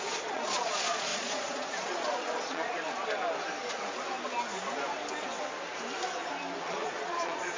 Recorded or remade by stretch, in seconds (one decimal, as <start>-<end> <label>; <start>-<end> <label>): 0.0-2.7 remade; 2.7-6.6 recorded; 6.6-7.6 remade